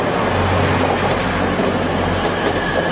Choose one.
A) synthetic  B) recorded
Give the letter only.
B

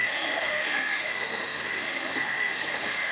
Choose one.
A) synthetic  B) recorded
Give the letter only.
A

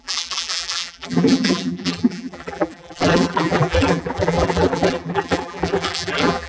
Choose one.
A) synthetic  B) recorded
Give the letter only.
A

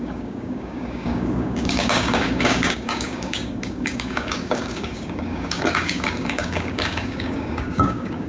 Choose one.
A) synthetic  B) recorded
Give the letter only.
A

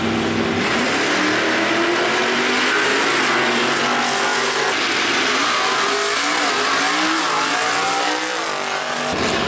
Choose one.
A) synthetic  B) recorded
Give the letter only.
B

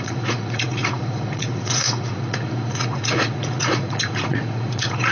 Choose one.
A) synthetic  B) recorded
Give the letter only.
A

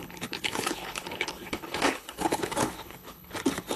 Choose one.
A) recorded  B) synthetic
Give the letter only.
B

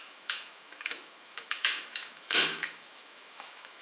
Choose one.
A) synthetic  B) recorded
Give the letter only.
A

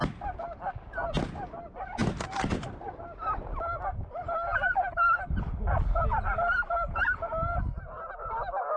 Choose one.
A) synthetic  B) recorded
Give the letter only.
B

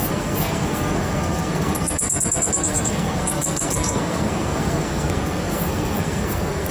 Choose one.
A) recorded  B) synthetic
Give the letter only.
B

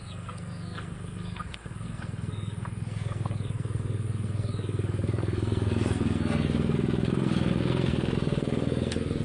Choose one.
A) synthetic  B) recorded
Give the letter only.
A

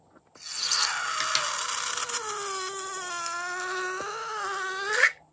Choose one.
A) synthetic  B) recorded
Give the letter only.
B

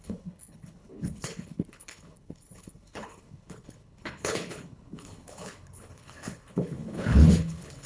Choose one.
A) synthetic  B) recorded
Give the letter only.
A